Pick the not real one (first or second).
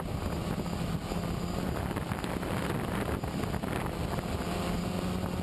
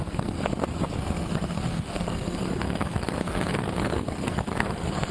second